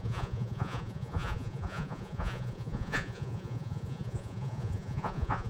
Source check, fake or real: fake